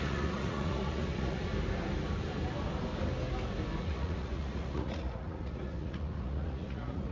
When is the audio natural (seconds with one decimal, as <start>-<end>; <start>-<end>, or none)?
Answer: 1.5-3.8